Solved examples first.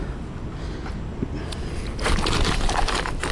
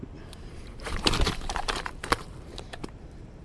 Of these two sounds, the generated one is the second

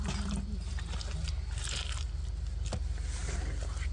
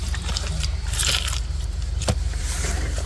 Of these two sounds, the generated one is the second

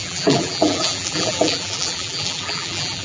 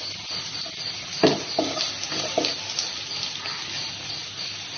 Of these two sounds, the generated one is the first